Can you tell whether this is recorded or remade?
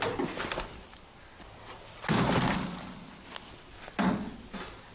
recorded